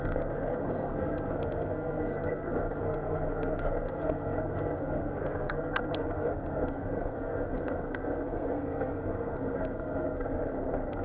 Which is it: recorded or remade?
remade